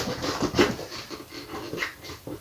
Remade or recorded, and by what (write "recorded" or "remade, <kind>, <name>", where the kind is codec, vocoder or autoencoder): recorded